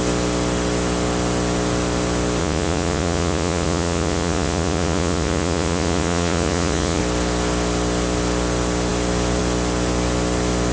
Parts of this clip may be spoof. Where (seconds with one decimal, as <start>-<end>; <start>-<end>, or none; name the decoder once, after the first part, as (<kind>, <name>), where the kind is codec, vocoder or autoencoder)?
2.4-7.0 (vocoder, Vocos)